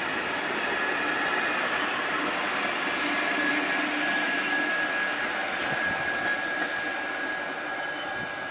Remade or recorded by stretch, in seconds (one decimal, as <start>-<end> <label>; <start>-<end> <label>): 0.0-8.5 recorded